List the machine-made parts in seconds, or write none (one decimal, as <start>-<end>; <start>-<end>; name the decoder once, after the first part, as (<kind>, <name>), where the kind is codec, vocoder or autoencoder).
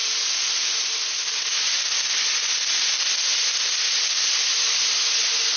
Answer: none